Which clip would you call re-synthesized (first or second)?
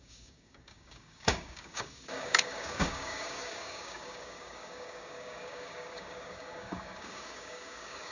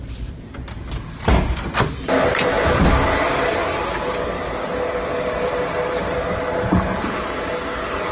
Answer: first